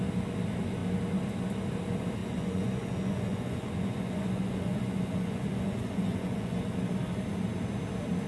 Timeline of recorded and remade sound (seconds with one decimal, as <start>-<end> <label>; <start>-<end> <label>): 0.0-2.2 recorded; 2.2-6.9 remade; 6.9-8.3 recorded